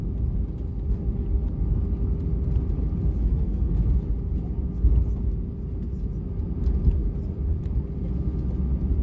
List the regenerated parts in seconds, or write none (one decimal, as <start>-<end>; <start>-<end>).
3.3-3.9